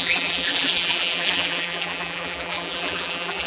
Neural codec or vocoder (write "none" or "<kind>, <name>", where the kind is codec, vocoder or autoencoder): vocoder, BigVGAN v2